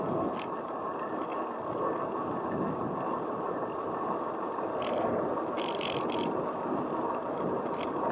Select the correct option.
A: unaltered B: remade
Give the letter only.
A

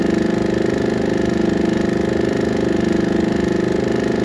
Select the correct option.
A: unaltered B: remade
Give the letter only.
A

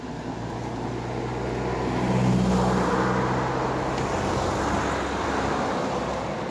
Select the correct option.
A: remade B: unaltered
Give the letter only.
B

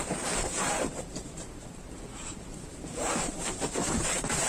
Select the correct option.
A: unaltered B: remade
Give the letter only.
B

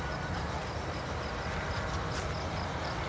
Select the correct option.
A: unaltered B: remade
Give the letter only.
A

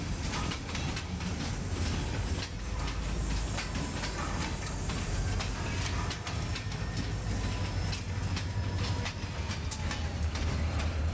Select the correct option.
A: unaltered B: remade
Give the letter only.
A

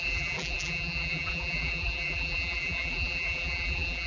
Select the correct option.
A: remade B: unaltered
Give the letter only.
A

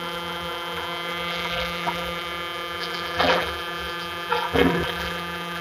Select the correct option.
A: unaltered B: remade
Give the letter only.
B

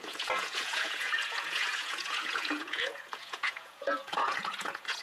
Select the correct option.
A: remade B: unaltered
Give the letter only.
A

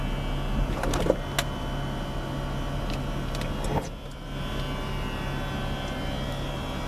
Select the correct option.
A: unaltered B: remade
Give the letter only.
A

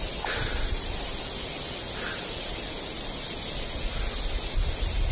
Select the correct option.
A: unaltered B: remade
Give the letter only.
A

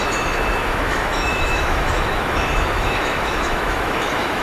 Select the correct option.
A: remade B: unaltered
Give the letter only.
A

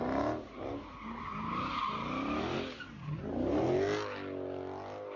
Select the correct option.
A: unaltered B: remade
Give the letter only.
A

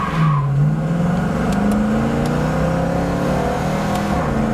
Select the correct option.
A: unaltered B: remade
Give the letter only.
A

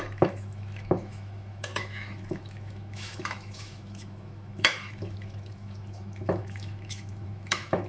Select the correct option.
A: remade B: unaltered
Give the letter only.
A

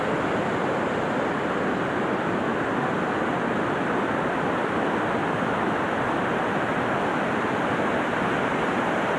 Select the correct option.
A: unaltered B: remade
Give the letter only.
A